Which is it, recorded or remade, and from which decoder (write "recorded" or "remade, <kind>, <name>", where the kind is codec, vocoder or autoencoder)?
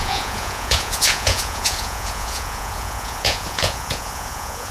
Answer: remade, vocoder, Vocos